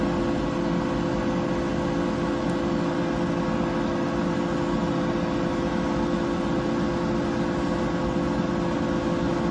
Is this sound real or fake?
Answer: real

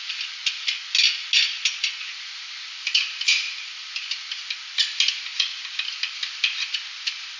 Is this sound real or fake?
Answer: real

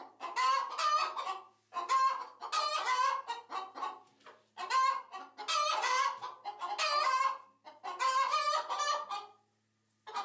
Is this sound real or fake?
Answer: real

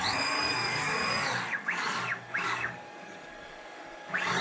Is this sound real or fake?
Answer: fake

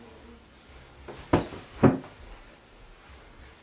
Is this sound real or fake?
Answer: real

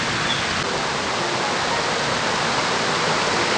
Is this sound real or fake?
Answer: real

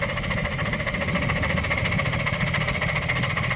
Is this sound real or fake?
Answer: real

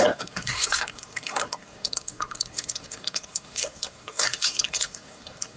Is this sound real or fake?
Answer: fake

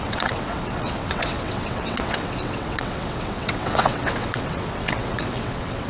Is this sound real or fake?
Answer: fake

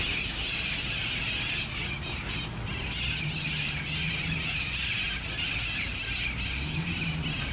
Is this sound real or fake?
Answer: real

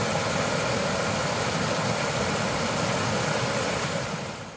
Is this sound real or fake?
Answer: real